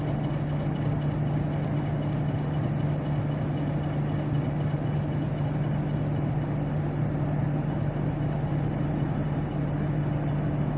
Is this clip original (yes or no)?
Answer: yes